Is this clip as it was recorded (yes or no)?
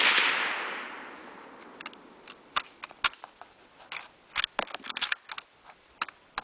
yes